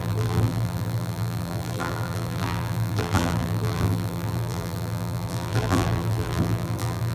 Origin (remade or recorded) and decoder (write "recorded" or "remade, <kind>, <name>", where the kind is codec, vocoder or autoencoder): remade, vocoder, BigVGAN v2